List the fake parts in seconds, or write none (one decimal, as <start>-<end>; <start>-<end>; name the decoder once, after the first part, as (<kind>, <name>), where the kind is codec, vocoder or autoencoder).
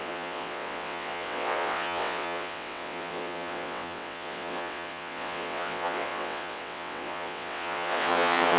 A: 0.0-8.6 (vocoder, WaveNeXt)